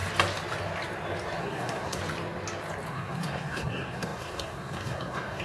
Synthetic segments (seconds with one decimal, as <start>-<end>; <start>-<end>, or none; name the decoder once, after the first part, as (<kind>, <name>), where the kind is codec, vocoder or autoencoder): 1.4-2.0 (codec, SNAC); 2.9-5.4